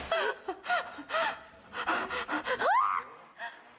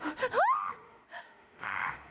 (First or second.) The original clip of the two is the first